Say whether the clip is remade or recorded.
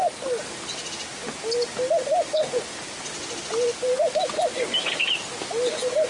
recorded